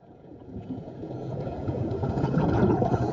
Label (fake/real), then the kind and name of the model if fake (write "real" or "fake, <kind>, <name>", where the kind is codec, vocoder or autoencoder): fake, vocoder, Vocos